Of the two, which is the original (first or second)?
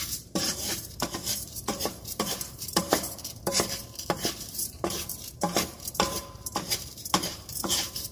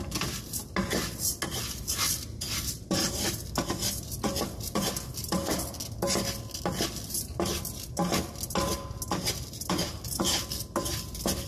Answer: second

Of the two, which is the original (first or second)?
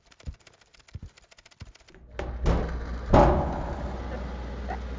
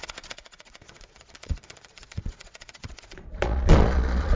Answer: first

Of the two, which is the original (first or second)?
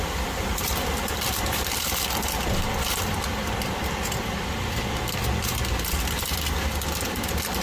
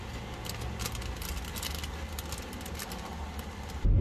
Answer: second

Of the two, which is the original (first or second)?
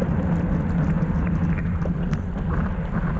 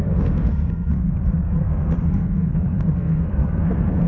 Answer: first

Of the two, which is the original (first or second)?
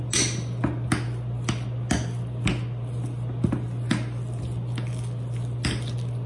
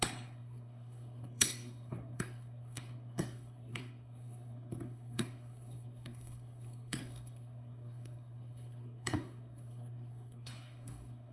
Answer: first